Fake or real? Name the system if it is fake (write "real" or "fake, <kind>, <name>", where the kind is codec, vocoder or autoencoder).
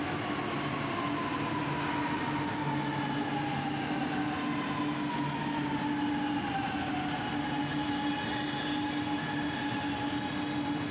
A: real